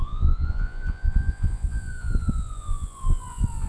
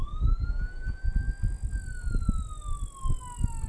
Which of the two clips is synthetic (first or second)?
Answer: first